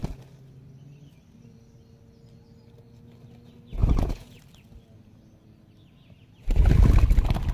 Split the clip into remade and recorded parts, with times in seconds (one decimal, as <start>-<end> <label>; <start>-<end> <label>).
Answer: 0.0-3.8 recorded; 3.8-4.4 remade; 4.4-7.5 recorded